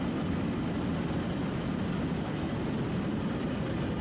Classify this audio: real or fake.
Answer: real